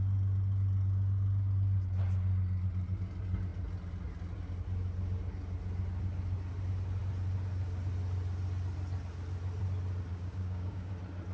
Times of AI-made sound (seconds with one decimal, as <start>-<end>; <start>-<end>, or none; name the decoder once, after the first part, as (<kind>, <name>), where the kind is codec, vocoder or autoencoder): 10.1-10.9 (codec, DAC)